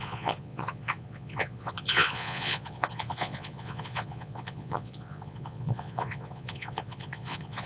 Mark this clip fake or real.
fake